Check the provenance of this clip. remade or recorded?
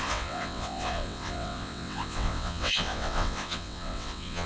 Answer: remade